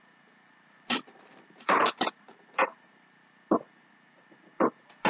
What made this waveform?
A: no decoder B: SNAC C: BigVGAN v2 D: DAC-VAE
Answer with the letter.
C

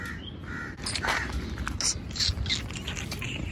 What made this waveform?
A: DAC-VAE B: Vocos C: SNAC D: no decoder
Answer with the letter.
D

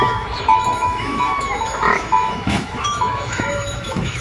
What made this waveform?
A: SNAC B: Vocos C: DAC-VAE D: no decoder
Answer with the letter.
C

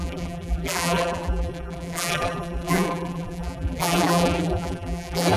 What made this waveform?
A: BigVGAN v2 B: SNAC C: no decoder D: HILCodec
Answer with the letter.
A